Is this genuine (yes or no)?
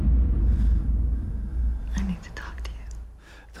no